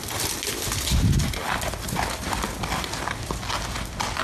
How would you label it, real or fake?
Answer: real